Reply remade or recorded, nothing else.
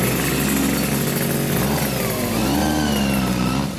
recorded